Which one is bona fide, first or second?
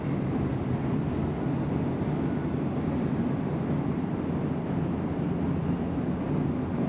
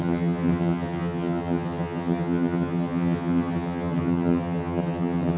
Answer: first